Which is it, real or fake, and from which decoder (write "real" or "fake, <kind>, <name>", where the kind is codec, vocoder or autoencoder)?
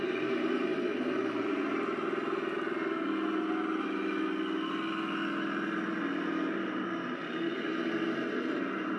real